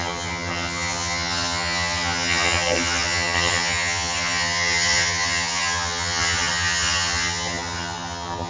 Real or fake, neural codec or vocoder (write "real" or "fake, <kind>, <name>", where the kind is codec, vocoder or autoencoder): fake, vocoder, HiFi-GAN